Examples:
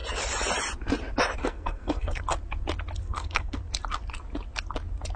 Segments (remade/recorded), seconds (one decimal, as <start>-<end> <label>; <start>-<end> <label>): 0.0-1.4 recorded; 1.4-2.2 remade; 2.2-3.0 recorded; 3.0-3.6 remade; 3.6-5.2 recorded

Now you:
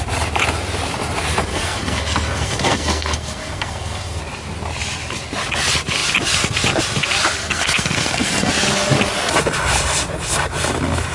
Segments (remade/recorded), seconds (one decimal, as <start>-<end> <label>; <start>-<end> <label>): 0.0-1.5 recorded; 1.5-4.2 remade; 4.2-7.4 recorded; 7.4-8.5 remade; 8.5-11.1 recorded

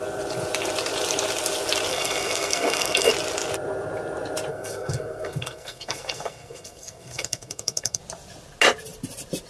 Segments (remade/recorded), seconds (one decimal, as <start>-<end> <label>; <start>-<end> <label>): 0.0-1.9 recorded; 1.9-3.1 remade; 3.1-4.5 recorded; 4.5-8.0 remade; 8.0-9.5 recorded

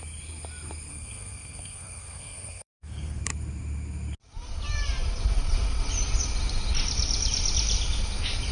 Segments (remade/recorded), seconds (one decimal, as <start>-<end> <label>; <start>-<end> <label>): 0.0-0.9 recorded; 0.9-3.2 remade; 3.2-8.5 recorded

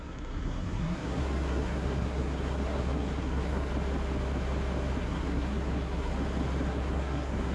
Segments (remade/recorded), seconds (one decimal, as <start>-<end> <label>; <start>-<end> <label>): 0.0-3.7 remade; 3.7-5.0 recorded; 5.0-6.1 remade; 6.1-6.7 recorded; 6.7-7.5 remade